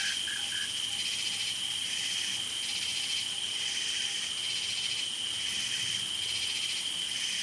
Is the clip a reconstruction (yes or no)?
no